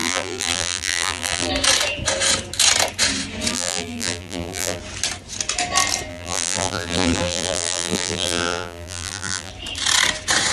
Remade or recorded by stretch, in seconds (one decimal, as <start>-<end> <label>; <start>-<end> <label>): 0.0-1.5 remade; 1.5-3.5 recorded; 3.5-4.8 remade; 4.8-6.1 recorded; 6.1-9.5 remade; 9.5-10.5 recorded